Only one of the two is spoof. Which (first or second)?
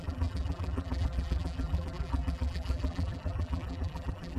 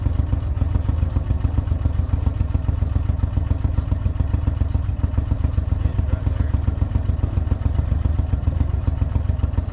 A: first